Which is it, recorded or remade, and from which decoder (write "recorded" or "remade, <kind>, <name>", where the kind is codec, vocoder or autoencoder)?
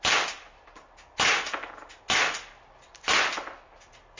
recorded